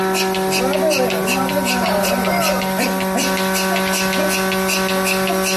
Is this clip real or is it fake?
real